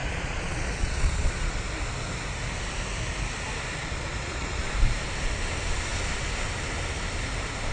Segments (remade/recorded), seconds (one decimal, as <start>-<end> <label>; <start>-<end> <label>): 0.0-1.6 remade; 1.6-3.8 recorded; 3.8-4.6 remade; 4.6-7.7 recorded